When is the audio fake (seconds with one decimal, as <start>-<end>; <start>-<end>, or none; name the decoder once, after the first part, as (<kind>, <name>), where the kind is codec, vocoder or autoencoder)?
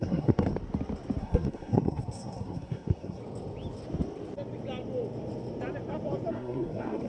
0.0-0.5 (codec, SNAC); 1.2-3.2; 6.3-7.1